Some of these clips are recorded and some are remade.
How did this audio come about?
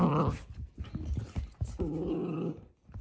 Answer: recorded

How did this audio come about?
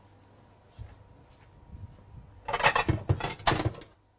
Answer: recorded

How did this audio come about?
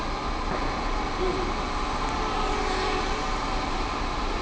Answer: recorded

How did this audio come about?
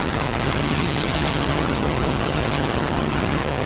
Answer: remade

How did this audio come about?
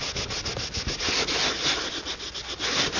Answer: recorded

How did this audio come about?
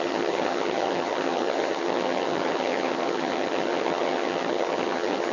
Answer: remade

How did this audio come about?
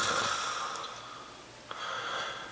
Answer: recorded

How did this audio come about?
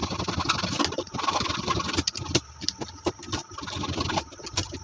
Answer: recorded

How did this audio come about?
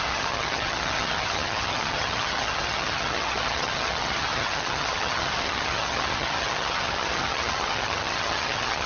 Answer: remade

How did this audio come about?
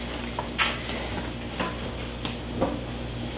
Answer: recorded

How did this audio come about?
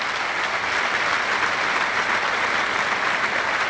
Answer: recorded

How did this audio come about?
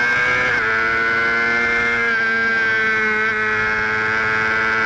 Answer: recorded